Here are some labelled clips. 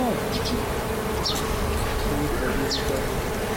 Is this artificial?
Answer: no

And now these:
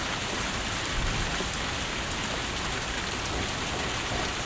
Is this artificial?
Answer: no